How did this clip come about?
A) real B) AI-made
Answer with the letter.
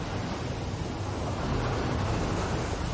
A